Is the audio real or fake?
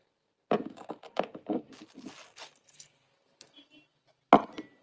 real